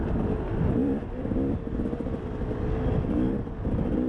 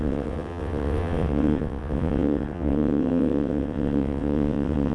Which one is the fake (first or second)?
second